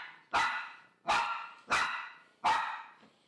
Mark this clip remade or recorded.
recorded